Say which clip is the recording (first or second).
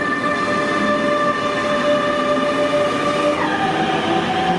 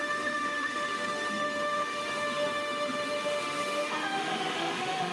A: first